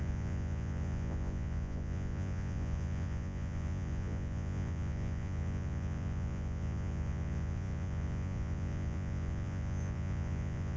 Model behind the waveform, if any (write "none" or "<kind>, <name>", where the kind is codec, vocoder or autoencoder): vocoder, Vocos